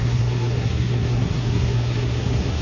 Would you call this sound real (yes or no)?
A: no